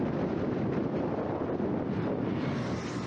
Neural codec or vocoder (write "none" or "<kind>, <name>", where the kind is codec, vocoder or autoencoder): none